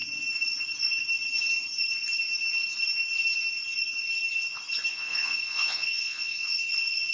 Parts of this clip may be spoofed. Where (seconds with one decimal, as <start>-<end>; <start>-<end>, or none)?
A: 4.9-6.6

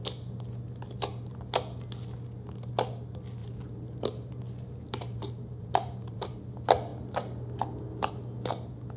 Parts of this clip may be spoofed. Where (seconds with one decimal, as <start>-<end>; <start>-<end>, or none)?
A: 3.4-6.4

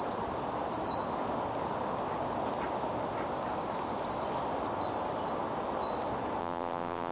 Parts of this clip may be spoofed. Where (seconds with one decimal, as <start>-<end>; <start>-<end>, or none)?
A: 6.4-7.1

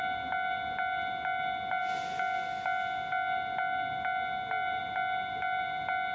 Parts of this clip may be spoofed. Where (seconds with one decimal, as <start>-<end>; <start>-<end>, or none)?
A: none

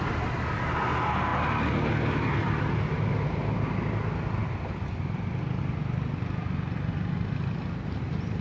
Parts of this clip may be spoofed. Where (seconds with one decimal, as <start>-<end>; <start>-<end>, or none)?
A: none

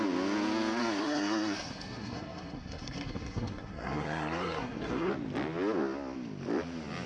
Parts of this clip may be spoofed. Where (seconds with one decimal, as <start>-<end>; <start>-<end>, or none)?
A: 0.8-5.1